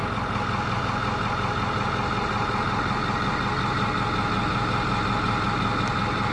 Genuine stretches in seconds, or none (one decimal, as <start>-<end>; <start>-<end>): 0.0-6.3